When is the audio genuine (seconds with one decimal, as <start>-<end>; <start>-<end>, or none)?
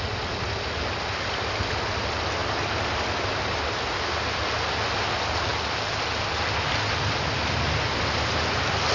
0.0-8.9